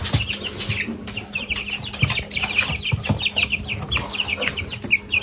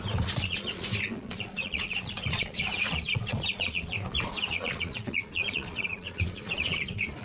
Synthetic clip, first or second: second